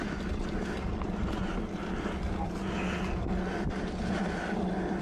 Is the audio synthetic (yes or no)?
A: no